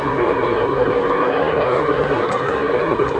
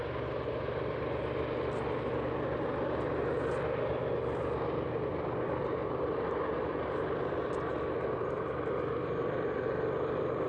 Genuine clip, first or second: second